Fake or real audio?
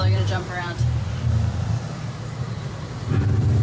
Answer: fake